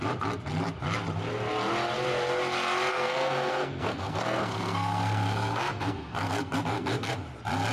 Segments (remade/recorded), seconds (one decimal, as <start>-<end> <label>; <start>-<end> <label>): 0.0-2.9 recorded; 2.9-7.1 remade; 7.1-7.7 recorded